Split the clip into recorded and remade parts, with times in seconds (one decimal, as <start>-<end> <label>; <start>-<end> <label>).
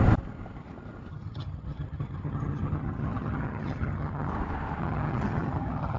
0.0-1.1 recorded; 1.1-4.3 remade; 4.3-4.8 recorded; 4.8-6.0 remade